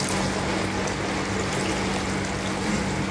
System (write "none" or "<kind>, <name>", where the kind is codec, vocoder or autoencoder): none